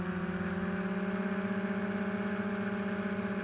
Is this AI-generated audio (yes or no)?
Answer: no